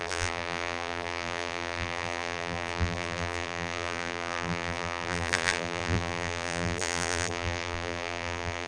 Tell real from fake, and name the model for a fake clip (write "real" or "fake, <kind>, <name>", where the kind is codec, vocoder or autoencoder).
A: fake, vocoder, BigVGAN v2